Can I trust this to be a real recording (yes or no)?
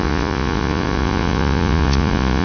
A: no